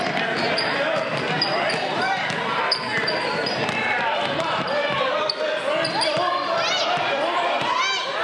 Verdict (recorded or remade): remade